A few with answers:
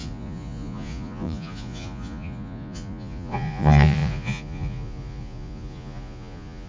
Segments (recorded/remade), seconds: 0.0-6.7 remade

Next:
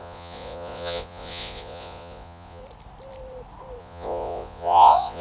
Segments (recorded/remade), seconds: 0.0-2.6 remade; 2.6-3.8 recorded; 3.8-5.2 remade

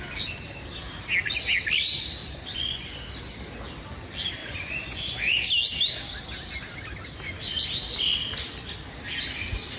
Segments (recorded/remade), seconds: 0.0-2.2 recorded; 2.2-2.9 remade; 2.9-4.4 recorded; 4.4-5.5 remade; 5.5-9.8 recorded

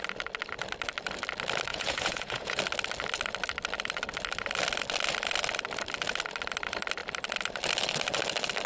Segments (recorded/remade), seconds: 0.0-1.7 recorded; 1.7-2.6 remade; 2.6-8.7 recorded

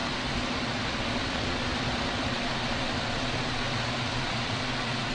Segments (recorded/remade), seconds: 0.0-5.1 remade

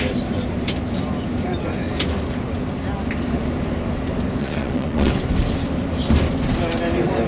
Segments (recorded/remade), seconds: 0.0-4.4 recorded; 4.4-5.1 remade; 5.1-7.3 recorded